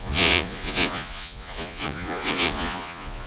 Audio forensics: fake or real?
fake